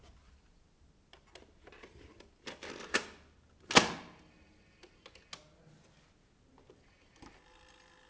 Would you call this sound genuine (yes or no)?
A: yes